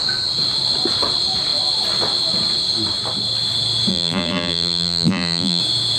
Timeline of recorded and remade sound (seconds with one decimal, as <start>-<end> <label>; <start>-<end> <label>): 0.0-3.9 recorded; 3.9-5.6 remade; 5.6-6.0 recorded